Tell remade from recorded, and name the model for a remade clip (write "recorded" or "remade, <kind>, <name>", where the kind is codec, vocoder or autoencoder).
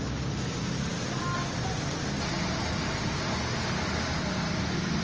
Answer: recorded